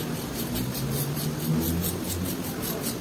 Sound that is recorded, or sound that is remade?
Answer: recorded